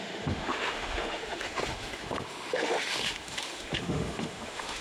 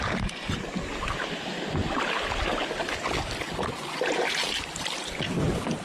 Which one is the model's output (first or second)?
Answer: first